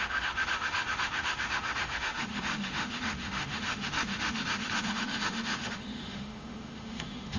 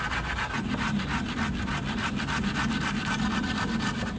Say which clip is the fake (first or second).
first